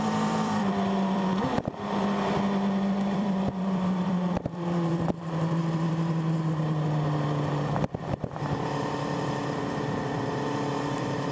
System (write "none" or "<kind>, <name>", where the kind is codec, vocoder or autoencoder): vocoder, BigVGAN v2